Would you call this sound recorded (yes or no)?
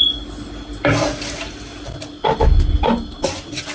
yes